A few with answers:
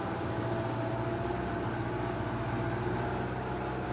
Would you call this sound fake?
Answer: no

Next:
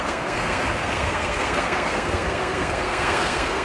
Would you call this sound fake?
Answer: yes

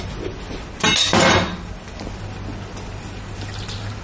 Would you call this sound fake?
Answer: no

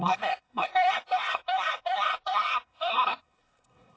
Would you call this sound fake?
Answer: yes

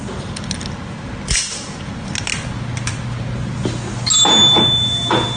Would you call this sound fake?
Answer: no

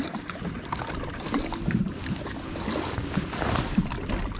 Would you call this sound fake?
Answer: no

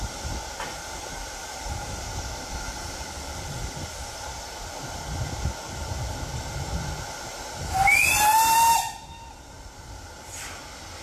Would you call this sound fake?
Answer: no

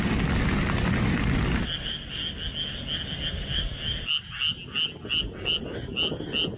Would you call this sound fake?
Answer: no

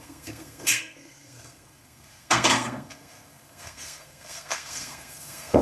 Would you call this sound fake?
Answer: yes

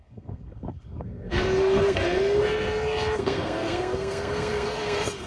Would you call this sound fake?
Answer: yes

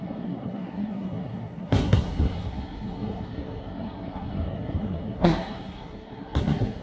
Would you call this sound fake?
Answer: yes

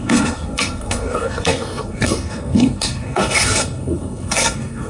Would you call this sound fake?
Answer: yes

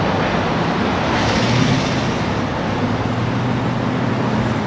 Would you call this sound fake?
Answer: no